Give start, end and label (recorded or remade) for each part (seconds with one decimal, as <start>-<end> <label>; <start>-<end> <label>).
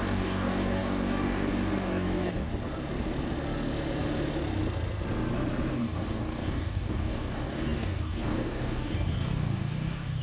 0.0-2.5 remade; 2.5-5.7 recorded; 5.7-10.2 remade